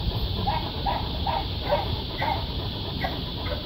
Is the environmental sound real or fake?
fake